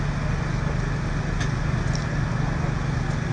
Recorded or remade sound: recorded